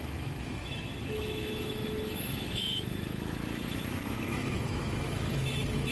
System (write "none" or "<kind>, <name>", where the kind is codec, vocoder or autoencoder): autoencoder, DAC-VAE